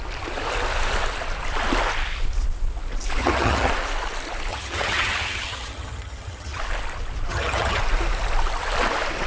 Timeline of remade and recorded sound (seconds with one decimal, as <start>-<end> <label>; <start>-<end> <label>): 0.0-3.2 recorded; 3.2-3.7 remade; 3.7-4.5 recorded; 4.5-6.6 remade; 6.6-7.3 recorded; 7.3-7.8 remade; 7.8-9.3 recorded